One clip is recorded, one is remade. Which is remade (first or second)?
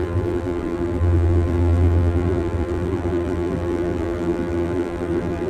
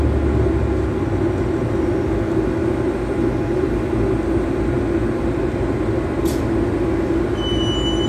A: first